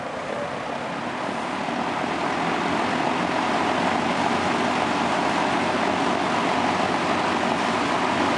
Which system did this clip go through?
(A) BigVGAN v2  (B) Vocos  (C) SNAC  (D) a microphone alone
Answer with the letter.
D